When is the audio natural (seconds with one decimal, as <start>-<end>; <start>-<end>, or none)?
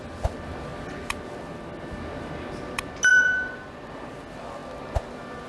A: 0.0-3.1; 3.9-5.5